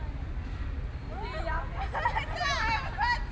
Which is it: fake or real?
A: real